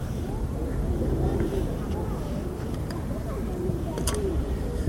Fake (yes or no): yes